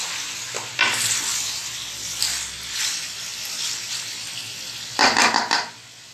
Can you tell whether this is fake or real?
real